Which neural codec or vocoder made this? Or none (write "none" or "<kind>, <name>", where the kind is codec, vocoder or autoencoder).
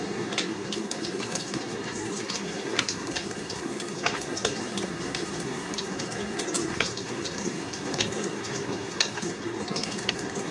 codec, SNAC